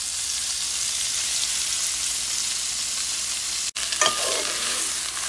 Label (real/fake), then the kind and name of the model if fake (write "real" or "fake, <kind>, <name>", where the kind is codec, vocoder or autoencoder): real